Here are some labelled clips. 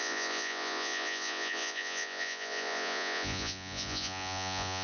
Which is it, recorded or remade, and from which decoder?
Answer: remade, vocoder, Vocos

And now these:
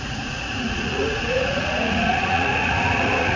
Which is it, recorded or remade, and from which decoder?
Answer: remade, vocoder, Vocos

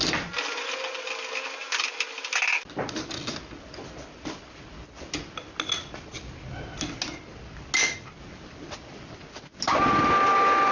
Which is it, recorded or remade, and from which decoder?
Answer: recorded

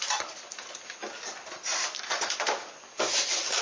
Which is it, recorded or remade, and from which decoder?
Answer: recorded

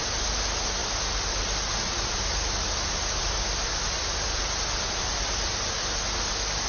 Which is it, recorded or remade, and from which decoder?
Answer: recorded